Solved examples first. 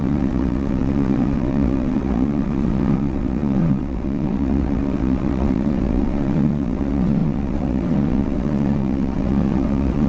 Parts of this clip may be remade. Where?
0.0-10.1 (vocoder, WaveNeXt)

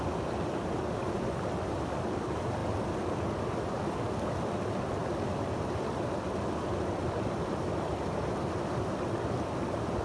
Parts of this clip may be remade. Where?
none

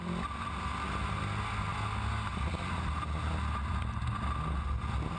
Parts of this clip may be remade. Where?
none

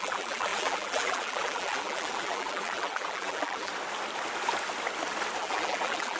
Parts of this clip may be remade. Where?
0.0-3.7 (vocoder, BigVGAN v2); 5.4-6.2